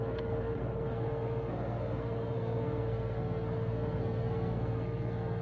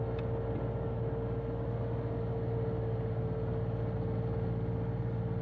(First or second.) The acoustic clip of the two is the second